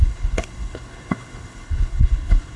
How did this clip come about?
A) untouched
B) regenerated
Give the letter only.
B